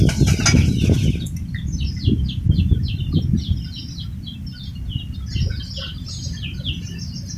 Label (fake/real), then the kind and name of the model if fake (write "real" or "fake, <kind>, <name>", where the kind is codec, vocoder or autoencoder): real